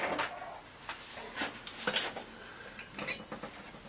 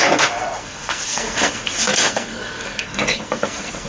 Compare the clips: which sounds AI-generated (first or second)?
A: second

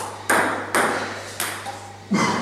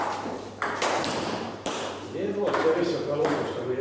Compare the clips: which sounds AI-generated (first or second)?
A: second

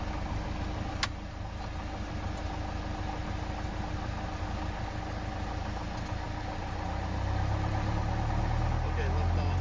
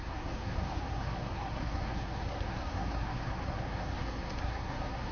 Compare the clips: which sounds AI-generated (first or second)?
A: second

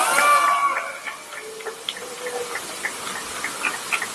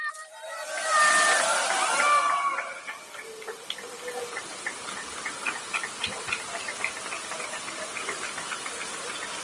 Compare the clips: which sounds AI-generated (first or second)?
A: second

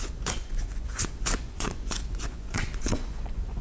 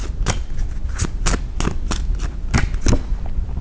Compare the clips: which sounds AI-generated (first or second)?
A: first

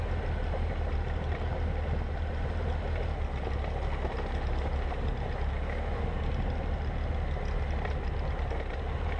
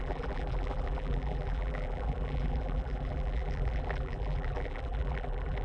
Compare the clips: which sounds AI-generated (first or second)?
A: second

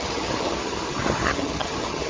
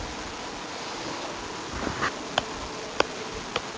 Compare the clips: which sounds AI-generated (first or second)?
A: first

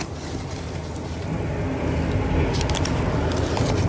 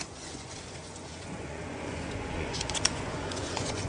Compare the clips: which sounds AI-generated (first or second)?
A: second